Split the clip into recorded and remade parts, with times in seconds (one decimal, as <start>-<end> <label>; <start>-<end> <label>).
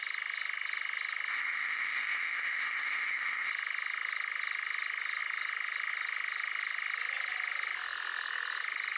0.0-1.3 recorded; 1.3-3.5 remade; 3.5-9.0 recorded